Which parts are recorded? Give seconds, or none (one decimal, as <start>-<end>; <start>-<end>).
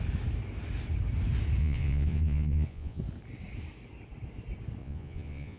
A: 0.0-1.6; 3.0-4.8